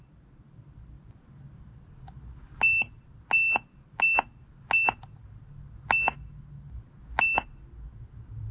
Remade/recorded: recorded